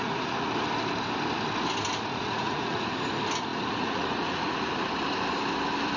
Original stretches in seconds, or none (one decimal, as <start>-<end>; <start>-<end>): 0.5-2.1; 2.9-3.5; 4.7-6.0